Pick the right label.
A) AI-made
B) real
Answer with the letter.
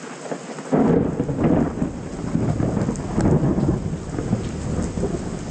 B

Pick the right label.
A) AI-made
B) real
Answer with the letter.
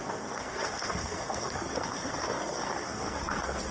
A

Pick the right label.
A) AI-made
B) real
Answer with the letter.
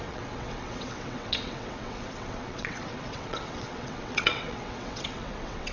A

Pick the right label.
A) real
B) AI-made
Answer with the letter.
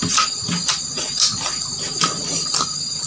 A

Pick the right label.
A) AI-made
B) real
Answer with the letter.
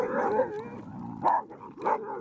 B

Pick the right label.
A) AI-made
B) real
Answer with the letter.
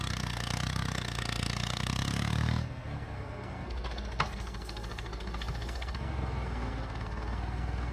A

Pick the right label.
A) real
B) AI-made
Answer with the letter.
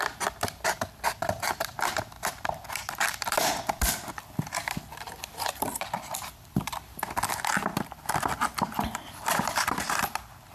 B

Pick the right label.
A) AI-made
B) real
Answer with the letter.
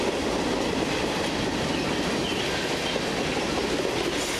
B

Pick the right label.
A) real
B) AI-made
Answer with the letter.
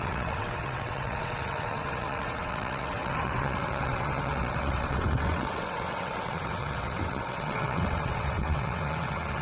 B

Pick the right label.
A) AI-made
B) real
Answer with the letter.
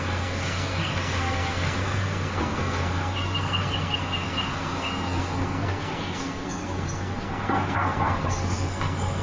A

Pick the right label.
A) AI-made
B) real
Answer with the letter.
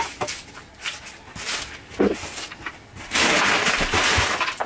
B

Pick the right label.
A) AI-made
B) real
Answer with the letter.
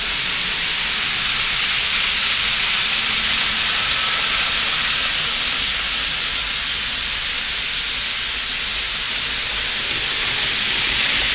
B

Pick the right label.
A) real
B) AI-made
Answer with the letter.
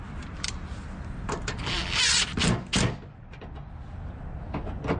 A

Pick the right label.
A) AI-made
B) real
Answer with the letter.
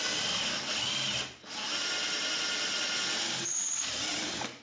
B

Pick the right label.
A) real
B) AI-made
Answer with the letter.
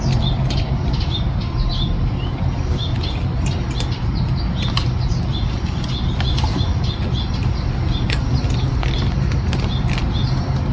A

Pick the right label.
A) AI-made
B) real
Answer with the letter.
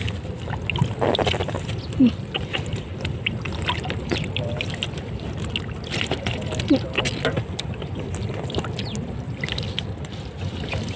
B